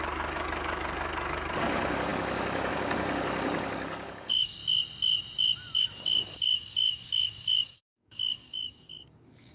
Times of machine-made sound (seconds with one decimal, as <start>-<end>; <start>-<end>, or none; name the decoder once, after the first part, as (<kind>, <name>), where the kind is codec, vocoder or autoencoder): 0.0-4.6 (codec, DAC); 5.8-9.5